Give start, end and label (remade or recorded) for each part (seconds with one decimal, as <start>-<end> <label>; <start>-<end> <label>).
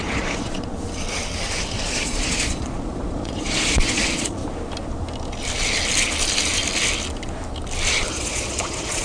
0.0-0.7 remade; 0.7-1.6 recorded; 1.6-4.4 remade; 4.4-8.1 recorded; 8.1-9.0 remade